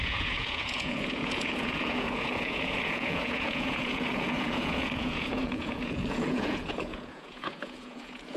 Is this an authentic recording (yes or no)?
no